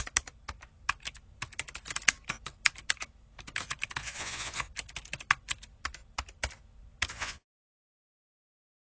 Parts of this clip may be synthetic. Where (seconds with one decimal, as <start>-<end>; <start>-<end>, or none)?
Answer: 4.0-4.6; 7.1-8.9

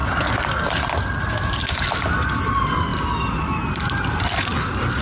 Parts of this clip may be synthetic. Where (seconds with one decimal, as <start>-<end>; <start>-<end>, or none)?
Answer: none

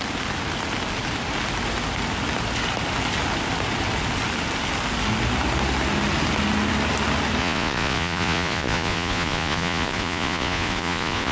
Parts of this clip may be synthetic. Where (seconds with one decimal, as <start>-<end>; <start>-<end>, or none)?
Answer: 7.4-11.3

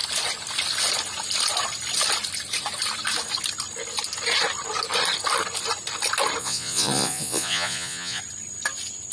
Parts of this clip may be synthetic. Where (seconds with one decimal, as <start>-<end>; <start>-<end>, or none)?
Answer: 6.4-8.2

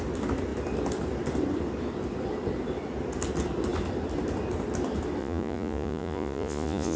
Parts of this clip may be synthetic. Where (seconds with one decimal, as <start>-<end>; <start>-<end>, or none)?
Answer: 5.2-7.0

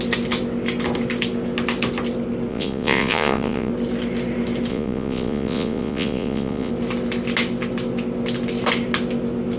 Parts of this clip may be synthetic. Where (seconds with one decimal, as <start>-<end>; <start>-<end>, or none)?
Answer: 2.5-3.7; 4.7-6.7

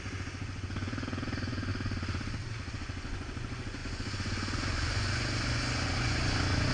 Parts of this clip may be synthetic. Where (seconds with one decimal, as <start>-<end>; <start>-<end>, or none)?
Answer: 0.0-1.7; 2.7-6.7

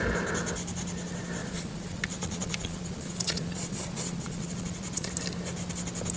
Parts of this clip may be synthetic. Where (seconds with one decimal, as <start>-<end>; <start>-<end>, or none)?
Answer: 1.4-5.1